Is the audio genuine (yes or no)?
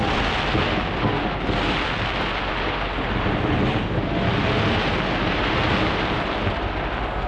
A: yes